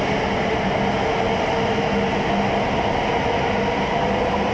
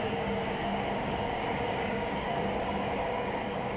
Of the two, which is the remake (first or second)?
second